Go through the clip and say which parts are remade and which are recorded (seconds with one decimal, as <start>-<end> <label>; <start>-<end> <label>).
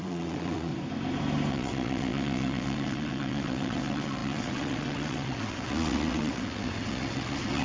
0.0-0.7 remade; 0.7-1.5 recorded; 1.5-7.6 remade